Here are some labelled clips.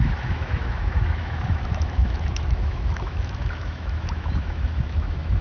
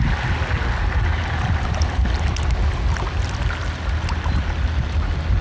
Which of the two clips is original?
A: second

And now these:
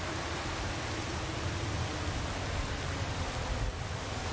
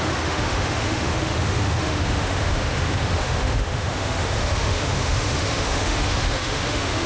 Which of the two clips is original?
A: first